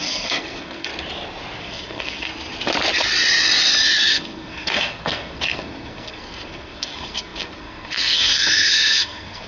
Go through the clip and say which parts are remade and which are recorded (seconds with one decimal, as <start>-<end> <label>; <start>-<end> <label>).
0.0-0.9 remade; 0.9-1.6 recorded; 1.6-2.3 remade; 2.3-4.1 recorded; 4.1-9.5 remade